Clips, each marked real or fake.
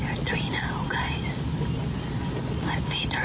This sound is real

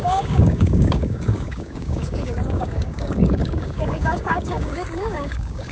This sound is fake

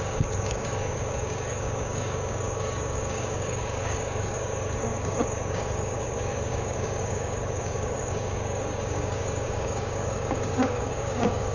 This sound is fake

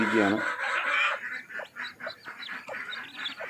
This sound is real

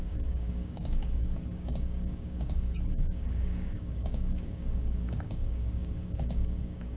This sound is fake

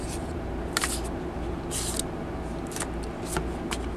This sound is real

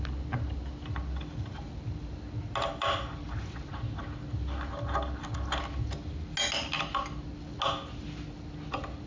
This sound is real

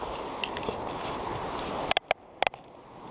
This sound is real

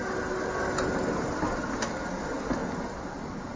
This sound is real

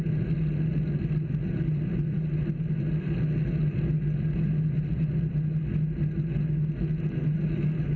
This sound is real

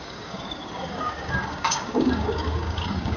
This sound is fake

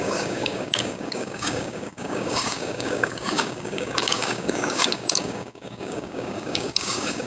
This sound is fake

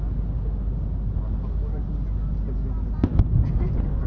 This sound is real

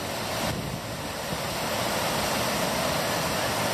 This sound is real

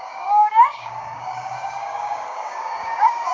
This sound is fake